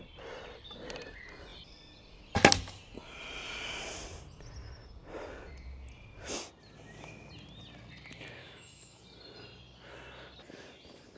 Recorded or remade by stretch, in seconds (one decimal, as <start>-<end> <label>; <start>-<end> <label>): 0.0-8.4 recorded; 8.4-9.0 remade; 9.0-11.2 recorded